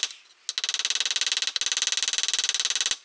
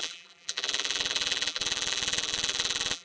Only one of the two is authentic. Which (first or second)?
first